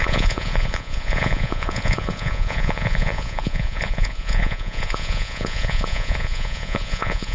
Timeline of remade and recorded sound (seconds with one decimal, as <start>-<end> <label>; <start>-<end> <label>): 0.0-7.3 remade